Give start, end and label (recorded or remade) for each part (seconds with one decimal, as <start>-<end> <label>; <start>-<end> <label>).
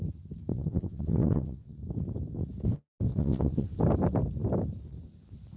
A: 0.0-0.5 recorded; 0.5-1.8 remade; 1.8-3.1 recorded; 3.1-3.7 remade; 3.7-5.6 recorded